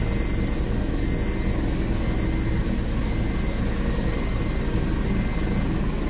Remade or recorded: recorded